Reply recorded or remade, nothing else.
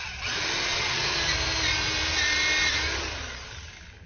recorded